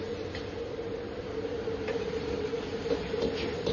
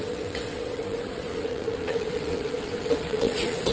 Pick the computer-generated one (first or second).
second